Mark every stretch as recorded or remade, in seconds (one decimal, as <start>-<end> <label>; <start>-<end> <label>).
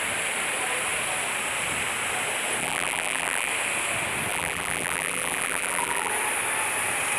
0.0-2.6 recorded; 2.6-3.5 remade; 3.5-4.3 recorded; 4.3-6.1 remade; 6.1-7.2 recorded